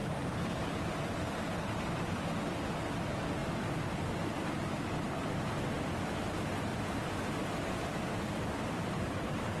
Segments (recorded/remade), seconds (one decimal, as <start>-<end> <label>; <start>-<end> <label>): 0.0-2.4 remade; 2.4-3.4 recorded; 3.4-5.6 remade; 5.6-6.7 recorded; 6.7-9.6 remade